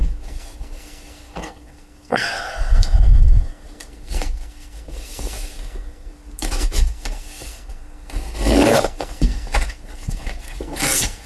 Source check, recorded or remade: remade